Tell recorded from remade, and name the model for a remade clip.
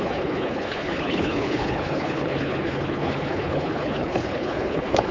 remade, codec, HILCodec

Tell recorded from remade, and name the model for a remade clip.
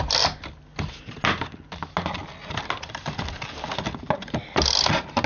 recorded